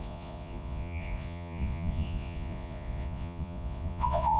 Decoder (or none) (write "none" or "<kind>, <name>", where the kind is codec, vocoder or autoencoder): vocoder, Vocos